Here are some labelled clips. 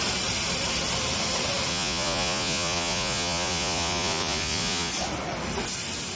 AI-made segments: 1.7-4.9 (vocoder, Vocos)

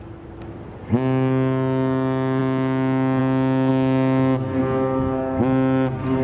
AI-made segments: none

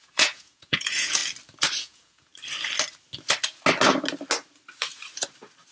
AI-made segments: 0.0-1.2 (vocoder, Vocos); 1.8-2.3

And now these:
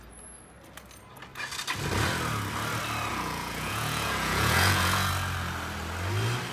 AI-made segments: 3.1-5.1 (vocoder, Vocos)

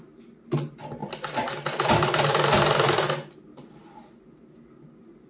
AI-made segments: none